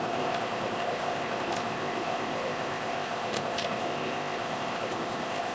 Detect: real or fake fake